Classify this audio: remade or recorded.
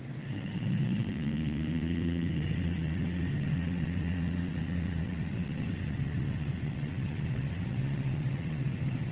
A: remade